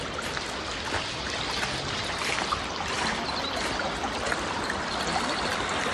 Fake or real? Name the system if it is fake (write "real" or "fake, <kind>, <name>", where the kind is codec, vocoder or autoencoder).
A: real